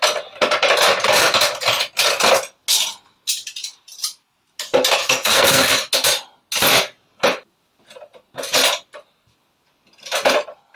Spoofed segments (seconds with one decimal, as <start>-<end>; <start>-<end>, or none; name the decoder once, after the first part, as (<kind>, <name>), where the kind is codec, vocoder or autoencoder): 5.0-5.7 (codec, SNAC)